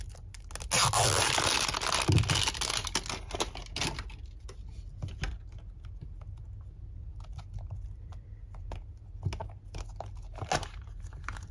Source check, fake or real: real